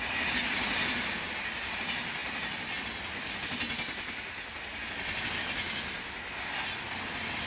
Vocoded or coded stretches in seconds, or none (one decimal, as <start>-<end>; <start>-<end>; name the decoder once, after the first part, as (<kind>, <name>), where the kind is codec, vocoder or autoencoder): none